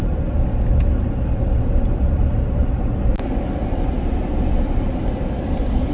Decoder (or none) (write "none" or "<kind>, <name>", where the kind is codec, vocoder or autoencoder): none